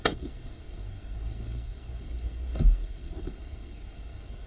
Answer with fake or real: fake